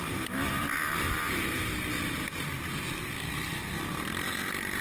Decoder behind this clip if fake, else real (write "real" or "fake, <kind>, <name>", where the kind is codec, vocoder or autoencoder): real